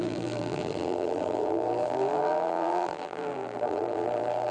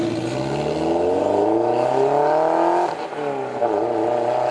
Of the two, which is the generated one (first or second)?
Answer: first